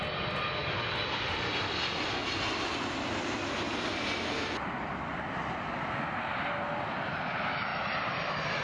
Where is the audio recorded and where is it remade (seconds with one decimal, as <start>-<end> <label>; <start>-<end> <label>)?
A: 0.0-7.7 recorded; 7.7-8.6 remade